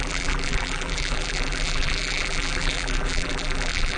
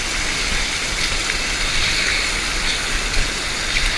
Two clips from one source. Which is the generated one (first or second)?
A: first